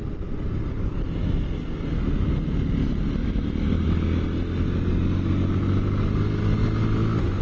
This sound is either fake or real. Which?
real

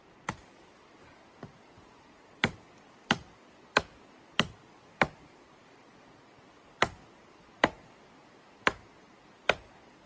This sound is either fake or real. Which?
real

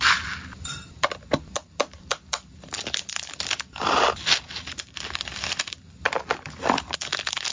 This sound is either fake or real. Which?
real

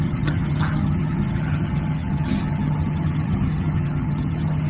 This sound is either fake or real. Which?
fake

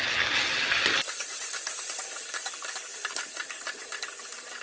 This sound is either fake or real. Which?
real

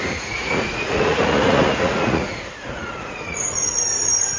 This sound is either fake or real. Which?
fake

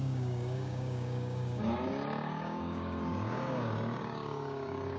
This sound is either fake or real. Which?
fake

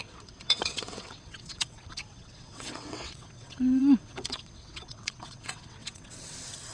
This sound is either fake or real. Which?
fake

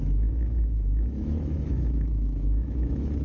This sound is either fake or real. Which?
fake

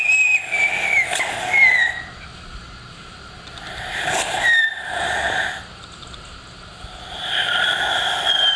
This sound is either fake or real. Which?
real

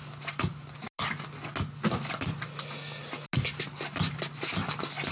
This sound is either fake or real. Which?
real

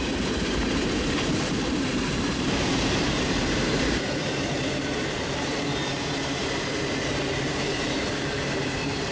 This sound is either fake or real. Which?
fake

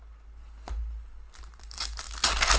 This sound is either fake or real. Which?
real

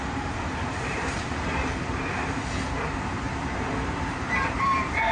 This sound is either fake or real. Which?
fake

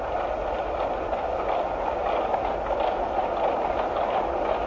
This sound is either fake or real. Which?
real